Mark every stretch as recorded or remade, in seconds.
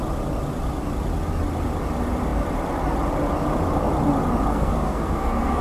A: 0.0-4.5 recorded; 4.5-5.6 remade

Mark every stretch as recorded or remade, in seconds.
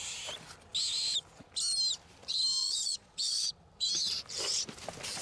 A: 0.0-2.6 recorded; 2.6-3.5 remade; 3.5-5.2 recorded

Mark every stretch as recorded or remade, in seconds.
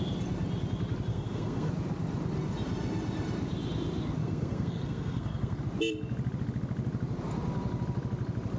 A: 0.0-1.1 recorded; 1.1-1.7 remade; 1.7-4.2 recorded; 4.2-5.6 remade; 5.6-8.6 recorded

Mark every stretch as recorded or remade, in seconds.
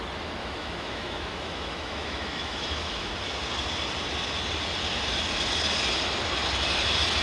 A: 0.0-0.4 recorded; 0.4-3.1 remade; 3.1-7.2 recorded